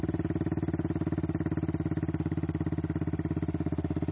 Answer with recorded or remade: recorded